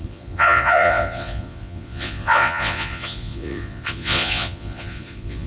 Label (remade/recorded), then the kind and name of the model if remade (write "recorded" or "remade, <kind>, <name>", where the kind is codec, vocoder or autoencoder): remade, vocoder, Vocos